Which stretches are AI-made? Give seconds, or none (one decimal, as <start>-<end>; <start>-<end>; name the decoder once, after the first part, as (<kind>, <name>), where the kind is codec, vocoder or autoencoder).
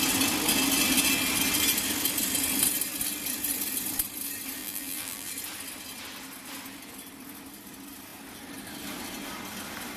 4.6-5.3 (vocoder, BigVGAN v2)